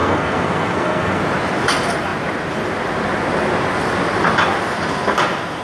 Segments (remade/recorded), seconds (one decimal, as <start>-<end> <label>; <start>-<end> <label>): 0.0-1.2 remade; 1.2-5.6 recorded